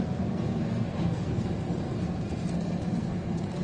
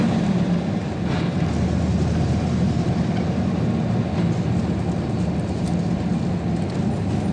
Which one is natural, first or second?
second